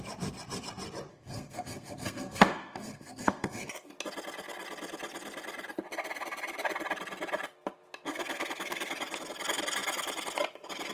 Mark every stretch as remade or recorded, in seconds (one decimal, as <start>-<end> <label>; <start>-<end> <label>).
0.0-1.1 recorded; 1.1-3.9 remade; 3.9-8.1 recorded; 8.1-8.9 remade; 8.9-10.9 recorded